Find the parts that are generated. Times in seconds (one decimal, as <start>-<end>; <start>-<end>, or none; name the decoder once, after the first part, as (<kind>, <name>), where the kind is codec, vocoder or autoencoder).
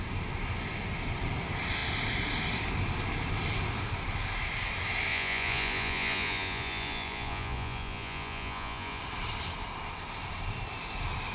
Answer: 5.1-9.0 (vocoder, Vocos)